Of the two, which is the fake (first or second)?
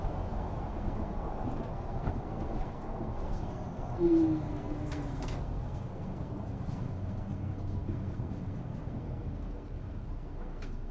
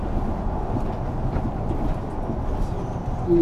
first